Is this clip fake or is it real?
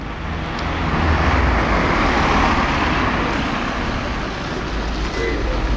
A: real